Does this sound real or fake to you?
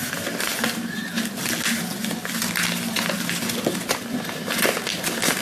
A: real